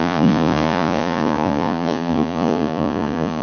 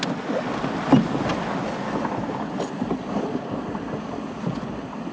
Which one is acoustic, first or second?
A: second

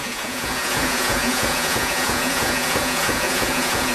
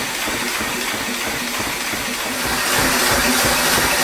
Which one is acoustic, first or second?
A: second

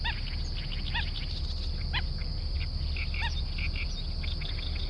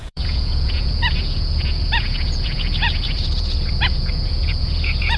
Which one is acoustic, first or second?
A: first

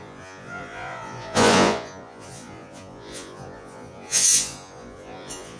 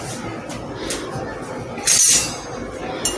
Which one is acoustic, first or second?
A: second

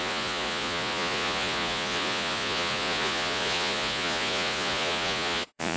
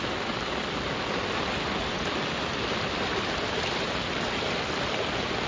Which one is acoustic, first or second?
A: second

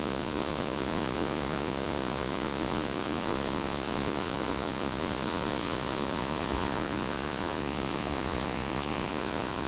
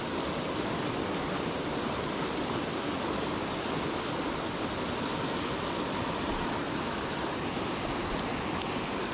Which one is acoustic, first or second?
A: second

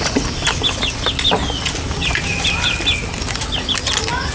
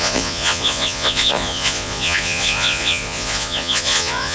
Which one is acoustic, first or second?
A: first